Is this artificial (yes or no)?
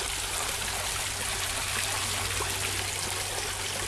no